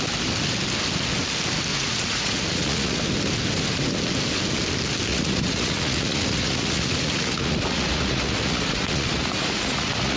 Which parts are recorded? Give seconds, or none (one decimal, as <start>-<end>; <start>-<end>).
0.0-1.7; 3.0-5.1